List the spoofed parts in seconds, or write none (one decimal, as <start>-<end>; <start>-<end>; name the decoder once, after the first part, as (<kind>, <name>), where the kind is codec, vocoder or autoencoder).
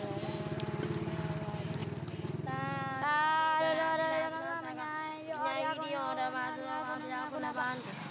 none